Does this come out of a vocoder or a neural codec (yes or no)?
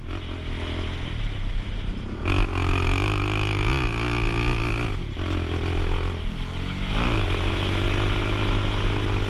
no